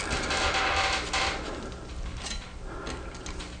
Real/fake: real